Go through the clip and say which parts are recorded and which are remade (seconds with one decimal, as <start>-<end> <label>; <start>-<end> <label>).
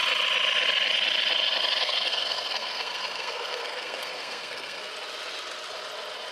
0.0-1.8 recorded; 1.8-4.9 remade; 4.9-6.3 recorded